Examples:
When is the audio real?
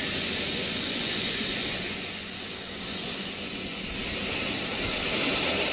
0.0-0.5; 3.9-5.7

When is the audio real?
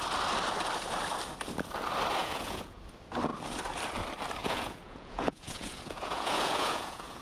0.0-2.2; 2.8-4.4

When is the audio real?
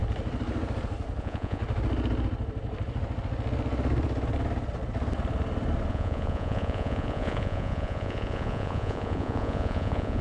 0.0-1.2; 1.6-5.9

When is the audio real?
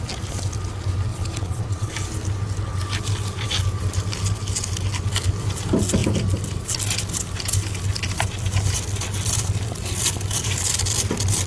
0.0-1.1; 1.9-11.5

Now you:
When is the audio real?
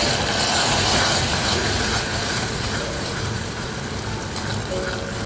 0.0-0.5; 3.7-5.3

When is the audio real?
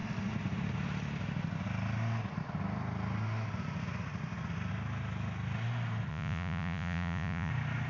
0.0-6.1; 7.5-7.9